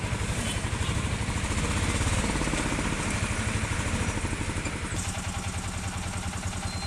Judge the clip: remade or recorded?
recorded